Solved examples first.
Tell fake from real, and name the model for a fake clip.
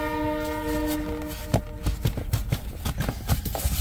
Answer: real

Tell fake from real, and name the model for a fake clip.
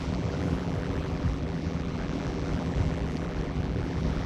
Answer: fake, vocoder, BigVGAN v2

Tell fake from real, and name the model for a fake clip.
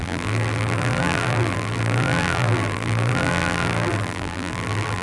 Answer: fake, vocoder, BigVGAN v2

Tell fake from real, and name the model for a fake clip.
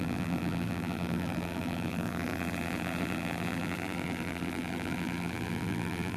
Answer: fake, vocoder, BigVGAN v2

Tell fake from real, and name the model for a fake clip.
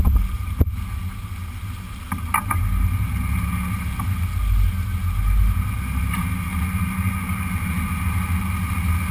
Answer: real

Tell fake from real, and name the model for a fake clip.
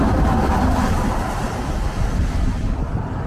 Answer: real